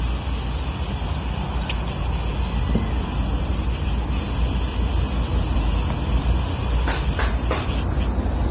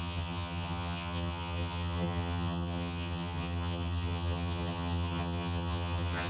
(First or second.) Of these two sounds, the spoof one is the second